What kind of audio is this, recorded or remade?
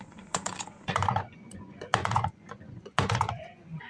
remade